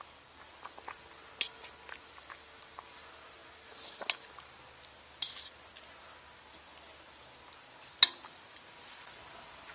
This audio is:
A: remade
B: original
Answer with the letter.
B